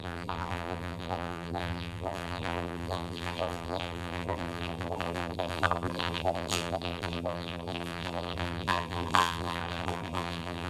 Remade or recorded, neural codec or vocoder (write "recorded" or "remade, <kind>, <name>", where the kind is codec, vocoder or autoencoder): remade, vocoder, BigVGAN v2